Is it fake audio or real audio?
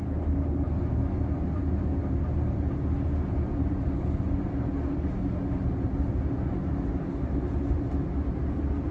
real